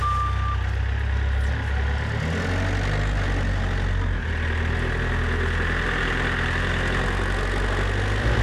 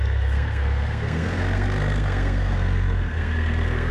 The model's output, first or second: second